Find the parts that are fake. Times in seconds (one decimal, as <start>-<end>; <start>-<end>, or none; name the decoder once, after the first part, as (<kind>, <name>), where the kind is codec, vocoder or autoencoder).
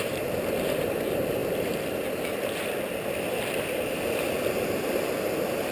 0.0-5.7 (vocoder, BigVGAN v2)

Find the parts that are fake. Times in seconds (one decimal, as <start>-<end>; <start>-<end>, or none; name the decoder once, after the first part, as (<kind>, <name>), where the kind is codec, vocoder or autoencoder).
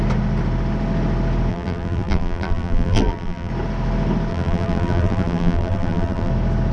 1.5-3.5 (vocoder, BigVGAN v2); 4.3-6.3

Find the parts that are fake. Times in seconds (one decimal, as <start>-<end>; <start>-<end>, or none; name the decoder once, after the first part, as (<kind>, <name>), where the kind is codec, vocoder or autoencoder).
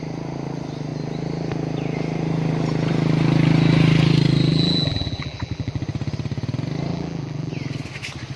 4.5-5.8 (vocoder, BigVGAN v2); 6.9-7.5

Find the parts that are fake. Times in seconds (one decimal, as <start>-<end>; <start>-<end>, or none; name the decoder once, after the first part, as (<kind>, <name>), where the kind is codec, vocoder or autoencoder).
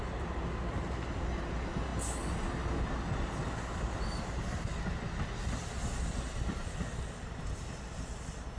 none